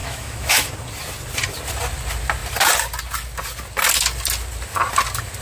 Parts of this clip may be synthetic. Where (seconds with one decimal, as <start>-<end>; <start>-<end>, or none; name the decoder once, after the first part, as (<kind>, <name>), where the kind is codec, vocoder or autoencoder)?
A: 0.0-0.7 (autoencoder, DAC-VAE)